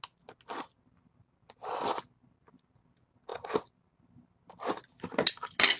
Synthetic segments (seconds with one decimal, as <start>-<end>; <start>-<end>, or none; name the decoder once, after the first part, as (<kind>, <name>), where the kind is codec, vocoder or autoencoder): none